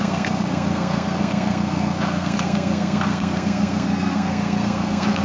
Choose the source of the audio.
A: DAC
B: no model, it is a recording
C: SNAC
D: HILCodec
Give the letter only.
C